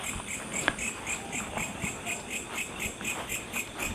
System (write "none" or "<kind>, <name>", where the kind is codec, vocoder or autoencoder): none